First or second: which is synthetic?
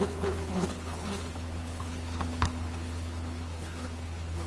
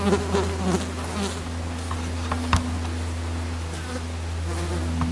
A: first